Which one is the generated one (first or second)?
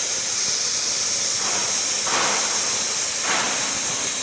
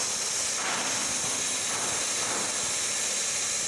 first